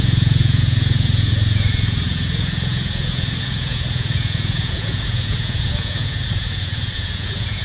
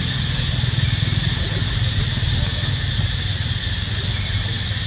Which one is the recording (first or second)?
second